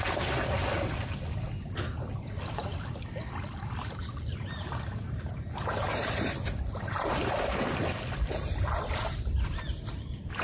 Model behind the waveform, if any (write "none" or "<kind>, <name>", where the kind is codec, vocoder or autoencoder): none